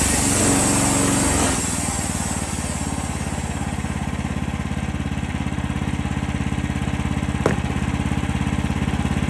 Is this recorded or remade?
recorded